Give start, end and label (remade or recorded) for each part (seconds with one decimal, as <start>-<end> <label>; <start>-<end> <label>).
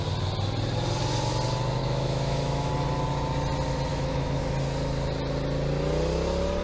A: 0.0-1.8 recorded; 1.8-2.7 remade; 2.7-3.9 recorded; 3.9-4.4 remade; 4.4-6.6 recorded